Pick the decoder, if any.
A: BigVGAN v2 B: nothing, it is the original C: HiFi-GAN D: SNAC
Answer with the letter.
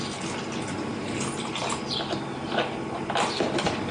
B